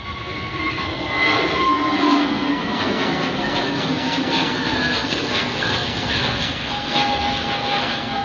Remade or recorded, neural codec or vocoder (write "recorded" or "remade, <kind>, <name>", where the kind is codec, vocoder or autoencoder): remade, codec, SNAC